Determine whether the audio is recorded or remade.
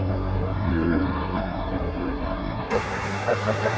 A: remade